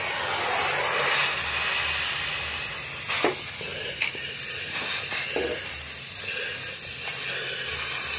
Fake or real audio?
real